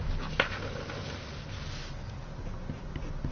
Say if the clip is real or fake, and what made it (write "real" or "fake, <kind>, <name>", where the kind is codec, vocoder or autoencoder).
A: real